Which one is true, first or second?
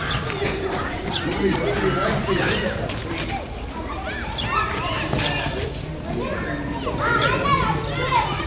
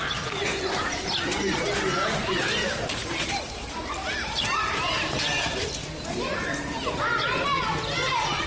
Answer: first